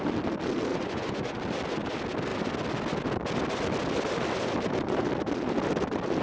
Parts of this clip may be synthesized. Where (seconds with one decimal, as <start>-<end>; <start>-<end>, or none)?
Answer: 0.7-1.4